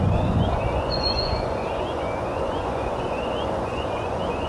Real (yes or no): no